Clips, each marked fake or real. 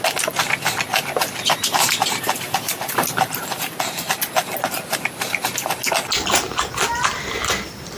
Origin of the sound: real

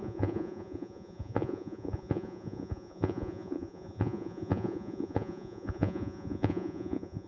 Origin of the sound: fake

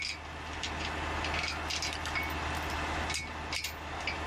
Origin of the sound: real